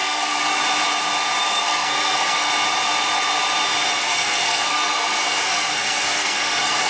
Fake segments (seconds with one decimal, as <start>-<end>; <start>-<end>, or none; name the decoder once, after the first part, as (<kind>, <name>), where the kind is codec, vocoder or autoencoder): 0.0-0.6 (codec, SNAC); 1.4-2.5; 4.1-6.9